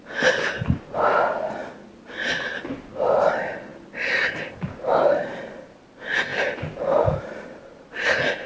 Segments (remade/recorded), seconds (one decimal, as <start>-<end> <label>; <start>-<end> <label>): 0.0-6.3 recorded; 6.3-7.6 remade; 7.6-8.5 recorded

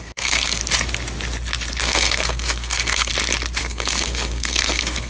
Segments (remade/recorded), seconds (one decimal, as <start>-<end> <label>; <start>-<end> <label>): 0.0-0.6 remade; 0.6-1.8 recorded; 1.8-3.1 remade; 3.1-3.6 recorded; 3.6-5.1 remade